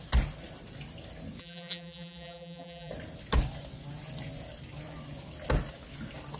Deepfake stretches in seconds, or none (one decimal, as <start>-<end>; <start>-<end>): 1.4-2.9